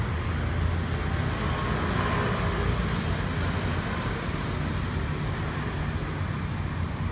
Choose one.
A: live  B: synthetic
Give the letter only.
A